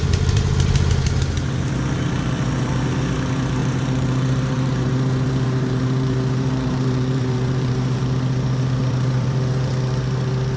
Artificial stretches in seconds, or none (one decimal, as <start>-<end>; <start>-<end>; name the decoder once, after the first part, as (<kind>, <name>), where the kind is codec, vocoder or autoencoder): 3.6-8.0 (vocoder, BigVGAN v2); 8.8-9.7